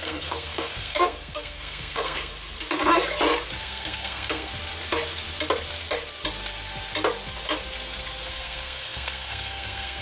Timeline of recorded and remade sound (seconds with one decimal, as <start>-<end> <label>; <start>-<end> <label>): 0.0-2.3 remade; 2.3-3.6 recorded; 3.6-4.5 remade; 4.5-8.3 recorded; 8.3-10.0 remade